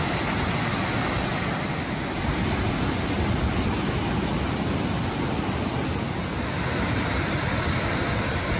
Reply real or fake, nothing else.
real